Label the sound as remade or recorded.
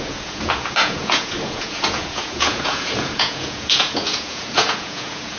remade